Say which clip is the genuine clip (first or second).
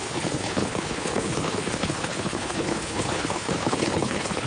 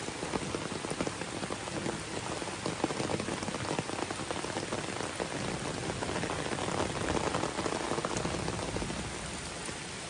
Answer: second